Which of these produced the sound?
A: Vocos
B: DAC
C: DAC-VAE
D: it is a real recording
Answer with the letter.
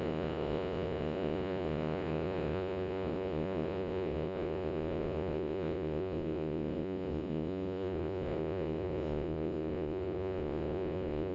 A